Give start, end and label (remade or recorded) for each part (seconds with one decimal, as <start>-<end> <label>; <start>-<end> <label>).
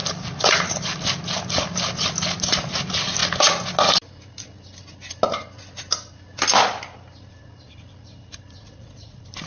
0.0-3.2 remade; 3.2-7.3 recorded; 7.3-9.5 remade